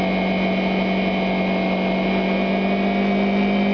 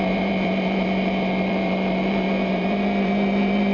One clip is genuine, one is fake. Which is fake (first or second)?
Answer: second